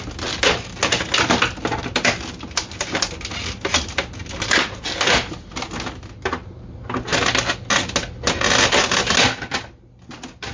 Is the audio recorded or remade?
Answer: recorded